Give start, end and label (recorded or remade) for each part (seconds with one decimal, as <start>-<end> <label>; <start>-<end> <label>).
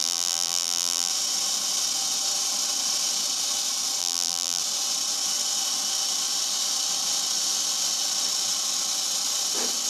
0.0-1.1 remade; 1.1-4.0 recorded; 4.0-4.6 remade; 4.6-9.9 recorded